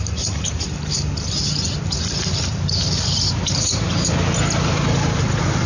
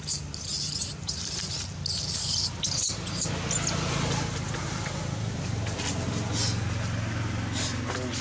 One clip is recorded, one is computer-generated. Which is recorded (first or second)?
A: second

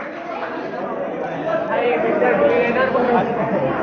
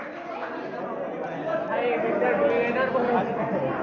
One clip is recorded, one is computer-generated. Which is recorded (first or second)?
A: second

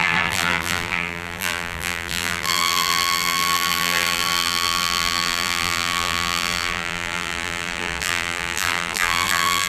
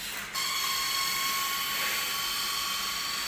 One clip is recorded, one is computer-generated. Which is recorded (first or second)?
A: second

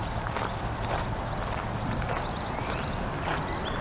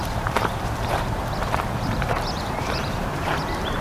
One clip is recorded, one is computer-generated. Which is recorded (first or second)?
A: first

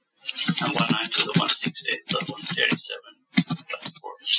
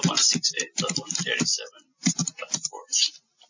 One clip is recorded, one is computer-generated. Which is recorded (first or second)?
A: first